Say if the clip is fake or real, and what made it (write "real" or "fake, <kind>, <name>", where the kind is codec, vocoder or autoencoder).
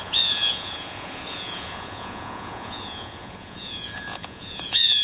fake, vocoder, Vocos